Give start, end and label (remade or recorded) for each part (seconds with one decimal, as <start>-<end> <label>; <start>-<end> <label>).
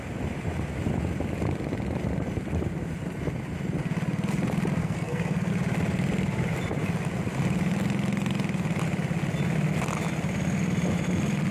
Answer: 0.0-4.8 recorded; 4.8-5.5 remade; 5.5-11.5 recorded